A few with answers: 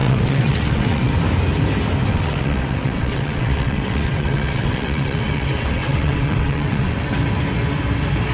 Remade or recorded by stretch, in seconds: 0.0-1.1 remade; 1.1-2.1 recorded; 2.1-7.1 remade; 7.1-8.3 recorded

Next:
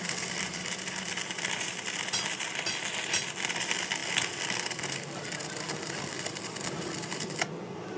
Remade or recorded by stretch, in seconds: 0.0-8.0 remade

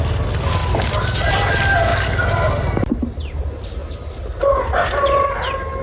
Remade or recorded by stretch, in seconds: 0.0-5.8 recorded

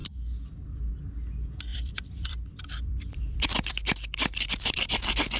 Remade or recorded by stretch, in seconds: 0.0-0.9 remade; 0.9-1.7 recorded; 1.7-4.9 remade; 4.9-5.4 recorded

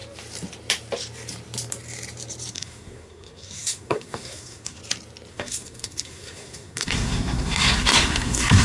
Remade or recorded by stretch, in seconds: 0.0-2.5 recorded; 2.5-4.8 remade; 4.8-5.3 recorded; 5.3-8.6 remade